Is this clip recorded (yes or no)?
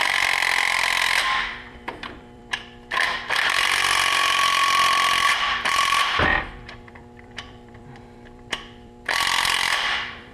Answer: no